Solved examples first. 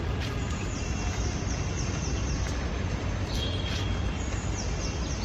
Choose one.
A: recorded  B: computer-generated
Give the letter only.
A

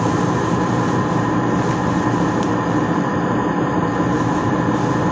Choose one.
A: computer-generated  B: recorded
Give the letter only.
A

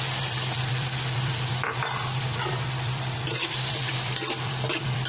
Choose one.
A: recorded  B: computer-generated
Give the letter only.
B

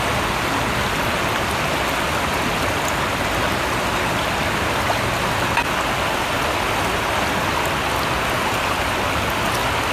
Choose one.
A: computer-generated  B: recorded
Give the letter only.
B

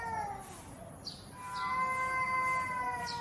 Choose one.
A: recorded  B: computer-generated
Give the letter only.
A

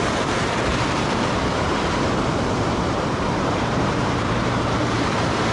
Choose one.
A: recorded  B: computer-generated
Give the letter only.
B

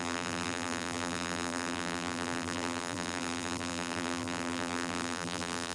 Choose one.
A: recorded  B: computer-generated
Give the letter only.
B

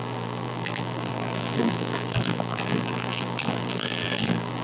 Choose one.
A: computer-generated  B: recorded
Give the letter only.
A